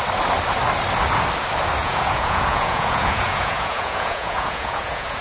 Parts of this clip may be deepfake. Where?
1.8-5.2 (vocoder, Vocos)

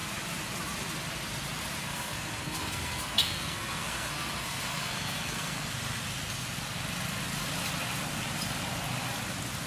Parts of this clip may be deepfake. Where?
1.8-5.7 (codec, SNAC)

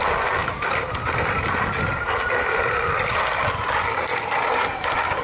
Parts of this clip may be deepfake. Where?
none